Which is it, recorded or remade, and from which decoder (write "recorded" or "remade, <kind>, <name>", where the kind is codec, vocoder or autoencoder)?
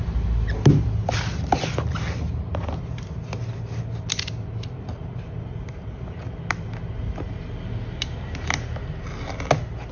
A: recorded